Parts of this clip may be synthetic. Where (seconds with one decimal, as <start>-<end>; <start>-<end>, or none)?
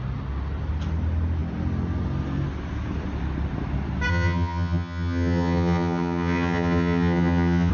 4.1-7.7